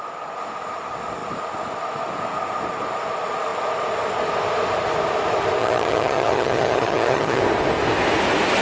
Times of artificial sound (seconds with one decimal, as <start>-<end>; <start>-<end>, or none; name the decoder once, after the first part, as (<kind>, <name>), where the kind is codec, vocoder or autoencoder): 5.6-7.4 (vocoder, HiFi-GAN)